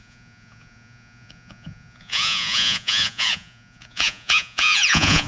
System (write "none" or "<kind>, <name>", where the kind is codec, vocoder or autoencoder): vocoder, Vocos